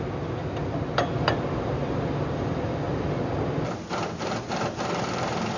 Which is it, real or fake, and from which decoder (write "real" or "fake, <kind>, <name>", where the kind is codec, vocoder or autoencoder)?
real